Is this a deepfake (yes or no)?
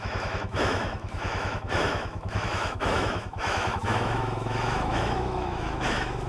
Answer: yes